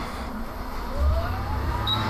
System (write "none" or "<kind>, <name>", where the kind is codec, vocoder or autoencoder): vocoder, BigVGAN v2